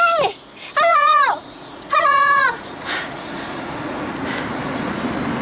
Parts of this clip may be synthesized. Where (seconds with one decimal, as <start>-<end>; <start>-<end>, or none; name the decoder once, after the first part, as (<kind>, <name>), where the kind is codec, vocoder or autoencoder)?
0.9-4.1 (vocoder, Vocos); 4.5-5.0